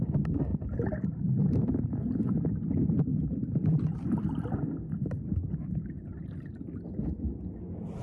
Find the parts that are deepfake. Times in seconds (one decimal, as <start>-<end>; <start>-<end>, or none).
0.5-1.2

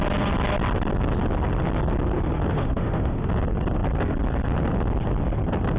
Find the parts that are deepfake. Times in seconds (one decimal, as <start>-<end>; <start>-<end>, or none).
2.5-3.3

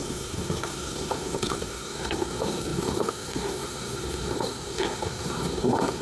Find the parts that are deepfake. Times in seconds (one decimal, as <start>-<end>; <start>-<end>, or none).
0.0-6.0

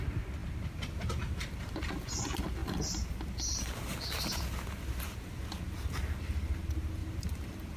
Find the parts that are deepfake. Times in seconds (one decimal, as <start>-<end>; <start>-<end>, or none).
0.4-2.1; 2.6-5.4; 7.0-7.8

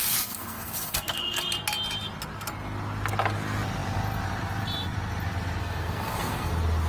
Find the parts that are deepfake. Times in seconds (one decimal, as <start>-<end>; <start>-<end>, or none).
0.0-1.4; 5.6-6.5

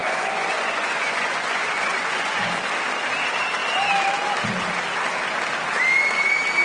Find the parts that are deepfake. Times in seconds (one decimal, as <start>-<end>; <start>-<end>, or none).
0.0-2.5

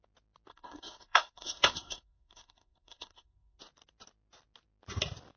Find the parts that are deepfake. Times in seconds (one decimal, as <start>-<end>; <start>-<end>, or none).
0.5-3.6